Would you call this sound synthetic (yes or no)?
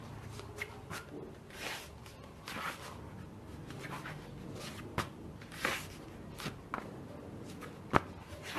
no